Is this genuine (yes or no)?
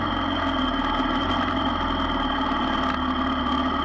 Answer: yes